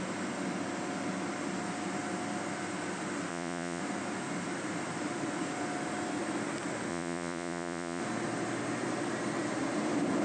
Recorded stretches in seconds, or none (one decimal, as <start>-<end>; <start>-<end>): 0.0-3.3; 3.8-6.9; 8.0-10.2